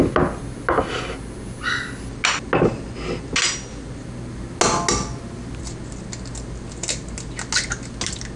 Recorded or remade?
recorded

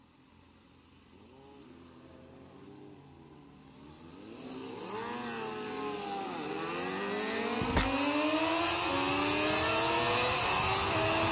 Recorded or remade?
recorded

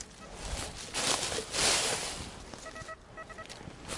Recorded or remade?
recorded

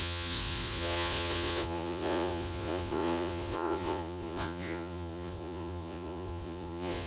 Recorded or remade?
remade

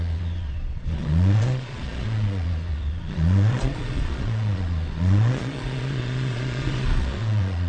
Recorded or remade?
remade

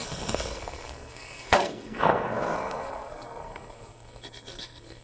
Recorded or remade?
remade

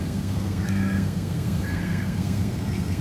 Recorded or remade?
remade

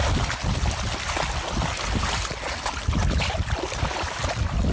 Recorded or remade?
recorded